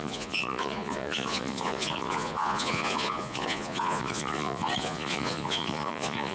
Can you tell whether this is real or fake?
fake